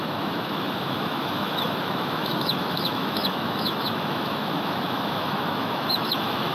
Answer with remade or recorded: remade